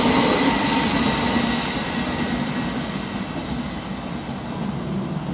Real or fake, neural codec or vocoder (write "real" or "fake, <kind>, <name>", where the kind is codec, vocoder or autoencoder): real